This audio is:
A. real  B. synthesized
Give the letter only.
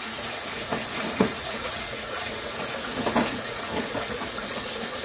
B